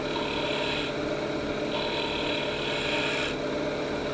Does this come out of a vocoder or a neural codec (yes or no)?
no